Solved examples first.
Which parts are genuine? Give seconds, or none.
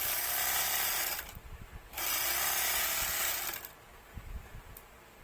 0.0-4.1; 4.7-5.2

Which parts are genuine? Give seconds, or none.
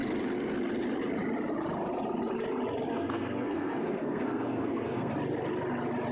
0.0-2.9; 5.1-6.1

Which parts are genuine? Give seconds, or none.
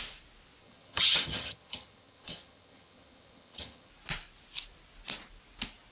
0.0-0.6; 3.9-5.9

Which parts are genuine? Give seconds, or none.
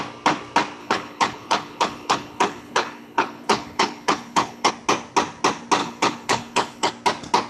0.0-0.8; 4.7-5.8; 6.9-7.5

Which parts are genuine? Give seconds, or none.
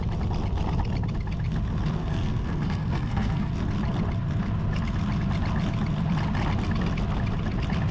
0.0-2.0; 3.5-7.9